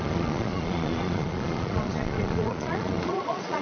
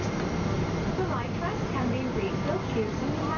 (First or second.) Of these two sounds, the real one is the second